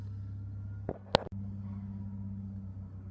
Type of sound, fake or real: real